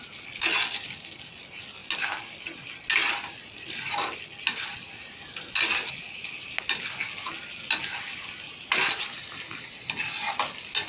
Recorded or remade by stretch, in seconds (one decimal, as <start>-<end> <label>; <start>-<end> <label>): 0.0-10.9 recorded